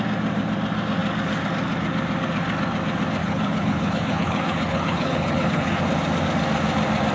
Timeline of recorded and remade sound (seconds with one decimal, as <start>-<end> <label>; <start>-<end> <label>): 0.0-3.2 recorded; 3.2-5.8 remade; 5.8-7.1 recorded